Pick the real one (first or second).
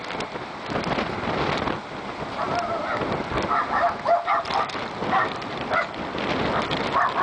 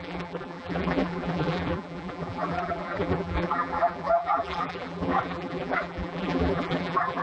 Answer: first